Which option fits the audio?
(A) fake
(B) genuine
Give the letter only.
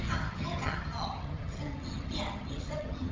A